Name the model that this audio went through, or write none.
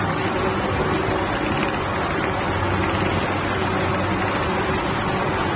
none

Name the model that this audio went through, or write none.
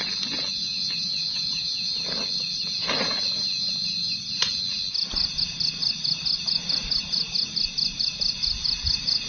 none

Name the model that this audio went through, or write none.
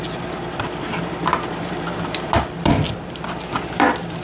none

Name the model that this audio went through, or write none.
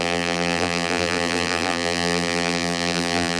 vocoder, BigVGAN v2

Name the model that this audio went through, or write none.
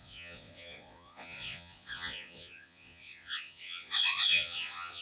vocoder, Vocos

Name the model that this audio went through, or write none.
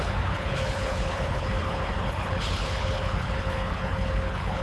codec, HILCodec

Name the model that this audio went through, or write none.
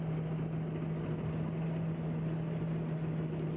none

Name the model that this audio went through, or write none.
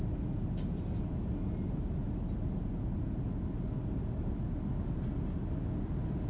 none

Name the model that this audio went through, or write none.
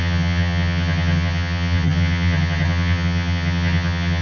vocoder, HiFi-GAN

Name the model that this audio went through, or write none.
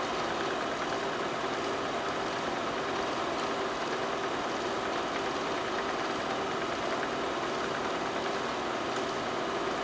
none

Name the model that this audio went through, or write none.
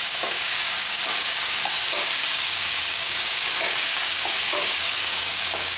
codec, DAC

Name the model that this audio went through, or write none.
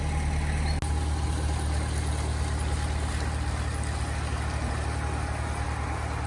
none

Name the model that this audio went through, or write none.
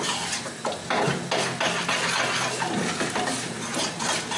none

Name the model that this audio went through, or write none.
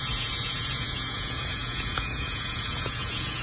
vocoder, Vocos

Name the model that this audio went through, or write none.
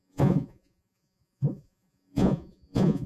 vocoder, Vocos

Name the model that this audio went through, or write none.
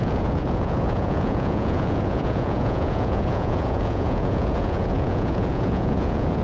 vocoder, Vocos